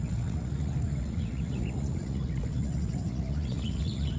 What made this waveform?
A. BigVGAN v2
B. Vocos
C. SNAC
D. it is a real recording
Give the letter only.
B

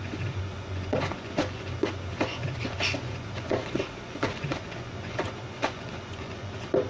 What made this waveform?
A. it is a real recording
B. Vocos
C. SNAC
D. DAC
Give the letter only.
B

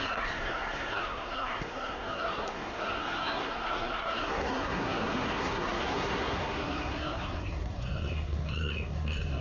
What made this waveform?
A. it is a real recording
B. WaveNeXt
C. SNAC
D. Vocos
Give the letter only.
C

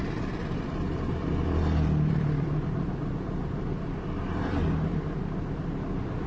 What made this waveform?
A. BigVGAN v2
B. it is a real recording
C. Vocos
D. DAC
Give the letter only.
A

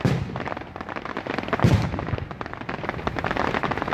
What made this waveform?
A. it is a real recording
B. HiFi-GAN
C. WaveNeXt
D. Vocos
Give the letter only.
A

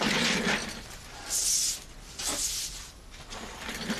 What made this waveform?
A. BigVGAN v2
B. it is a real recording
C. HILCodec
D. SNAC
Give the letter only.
B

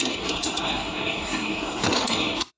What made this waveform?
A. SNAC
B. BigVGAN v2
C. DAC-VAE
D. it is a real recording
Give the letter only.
A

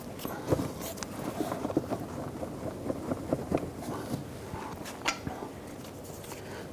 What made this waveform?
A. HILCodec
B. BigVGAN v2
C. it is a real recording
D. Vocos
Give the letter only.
C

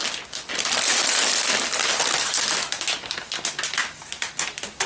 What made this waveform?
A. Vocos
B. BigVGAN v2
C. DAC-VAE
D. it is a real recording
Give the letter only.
D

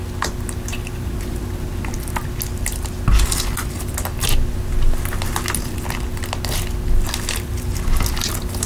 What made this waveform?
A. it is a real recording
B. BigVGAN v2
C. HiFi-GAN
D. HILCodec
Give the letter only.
A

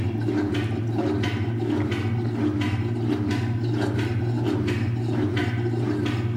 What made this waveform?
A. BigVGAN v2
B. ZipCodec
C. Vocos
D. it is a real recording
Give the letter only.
D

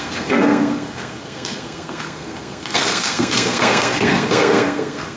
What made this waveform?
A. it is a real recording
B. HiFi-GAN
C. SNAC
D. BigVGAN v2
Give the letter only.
C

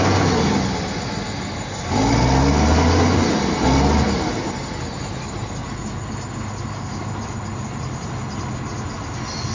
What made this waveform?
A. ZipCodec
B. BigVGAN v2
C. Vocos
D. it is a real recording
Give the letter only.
D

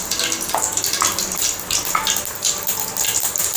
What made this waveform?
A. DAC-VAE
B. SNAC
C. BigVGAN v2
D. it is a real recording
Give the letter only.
D